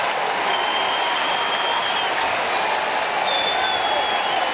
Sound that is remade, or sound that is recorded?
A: recorded